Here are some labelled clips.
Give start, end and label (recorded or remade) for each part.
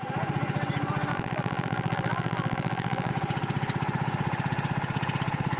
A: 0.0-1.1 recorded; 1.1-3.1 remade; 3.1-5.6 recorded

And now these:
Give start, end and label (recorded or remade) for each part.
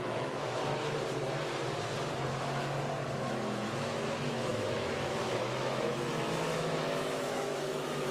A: 0.0-0.6 remade; 0.6-3.1 recorded; 3.1-8.1 remade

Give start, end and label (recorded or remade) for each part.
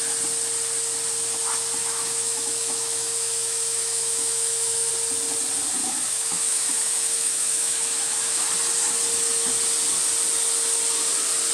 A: 0.0-1.8 recorded; 1.8-4.9 remade; 4.9-5.8 recorded; 5.8-8.5 remade; 8.5-11.5 recorded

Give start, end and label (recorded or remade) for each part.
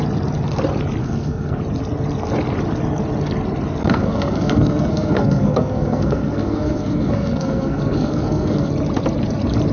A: 0.0-1.0 recorded; 1.0-1.6 remade; 1.6-3.8 recorded; 3.8-8.7 remade; 8.7-9.7 recorded